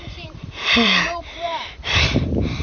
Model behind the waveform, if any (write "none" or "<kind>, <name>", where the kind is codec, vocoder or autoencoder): vocoder, BigVGAN v2